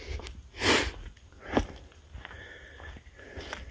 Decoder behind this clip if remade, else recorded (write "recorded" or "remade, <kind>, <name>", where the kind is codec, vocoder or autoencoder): recorded